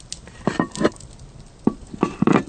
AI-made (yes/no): no